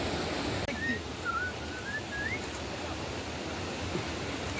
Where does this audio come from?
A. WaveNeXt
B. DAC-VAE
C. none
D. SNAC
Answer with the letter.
C